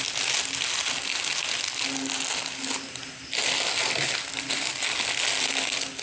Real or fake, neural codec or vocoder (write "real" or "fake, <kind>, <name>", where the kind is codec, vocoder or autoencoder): real